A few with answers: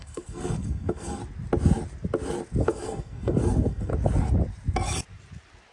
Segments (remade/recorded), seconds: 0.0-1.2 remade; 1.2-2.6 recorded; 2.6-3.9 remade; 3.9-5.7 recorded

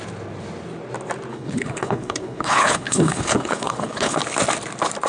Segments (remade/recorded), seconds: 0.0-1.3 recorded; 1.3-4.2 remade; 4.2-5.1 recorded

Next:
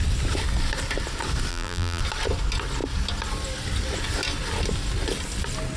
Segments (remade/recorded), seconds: 0.0-1.5 recorded; 1.5-2.0 remade; 2.0-5.8 recorded